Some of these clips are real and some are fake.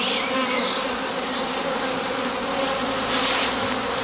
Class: real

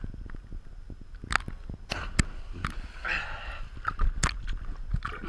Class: real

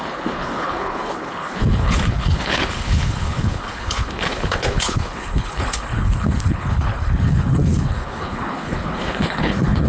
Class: fake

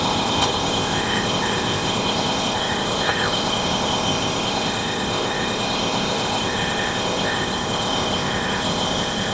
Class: fake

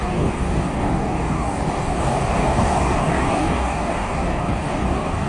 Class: fake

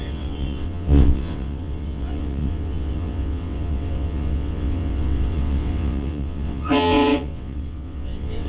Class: fake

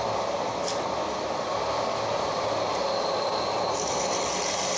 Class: real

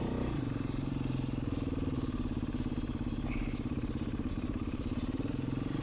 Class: fake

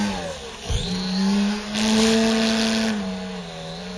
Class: real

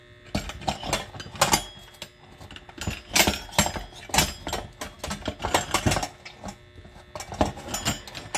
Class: real